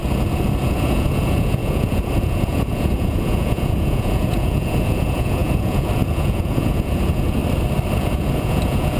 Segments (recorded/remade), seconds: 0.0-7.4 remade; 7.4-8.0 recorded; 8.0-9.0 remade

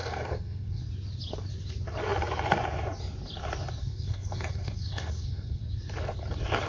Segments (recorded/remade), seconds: 0.0-0.8 remade; 0.8-3.8 recorded; 3.8-5.6 remade; 5.6-6.7 recorded

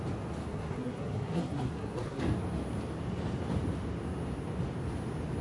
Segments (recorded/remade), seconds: 0.0-0.5 recorded; 0.5-2.2 remade; 2.2-5.4 recorded

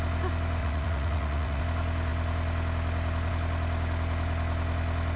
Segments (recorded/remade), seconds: 0.0-0.6 recorded; 0.6-1.6 remade; 1.6-5.2 recorded

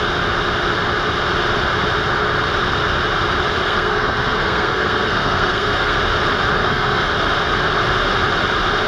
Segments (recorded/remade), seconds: 0.0-3.6 recorded; 3.6-6.0 remade; 6.0-6.6 recorded; 6.6-7.1 remade; 7.1-8.9 recorded

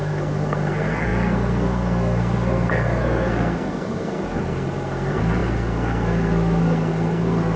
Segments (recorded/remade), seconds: 0.0-7.6 remade